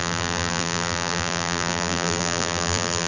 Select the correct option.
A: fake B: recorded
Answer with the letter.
A